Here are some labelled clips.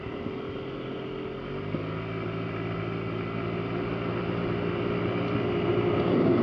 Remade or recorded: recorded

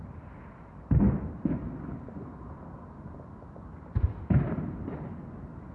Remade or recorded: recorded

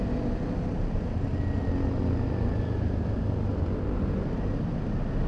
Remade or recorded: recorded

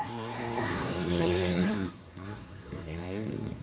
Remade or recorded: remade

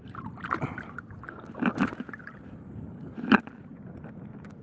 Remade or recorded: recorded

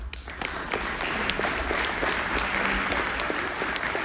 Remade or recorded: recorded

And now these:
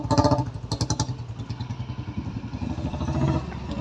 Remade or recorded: recorded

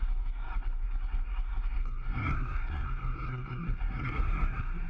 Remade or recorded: remade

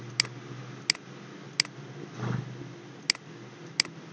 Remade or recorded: recorded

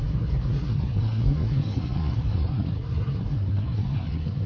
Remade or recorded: remade